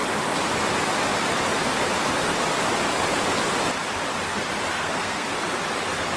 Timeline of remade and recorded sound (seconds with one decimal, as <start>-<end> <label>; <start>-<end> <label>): 0.0-4.7 recorded; 4.7-5.3 remade; 5.3-6.2 recorded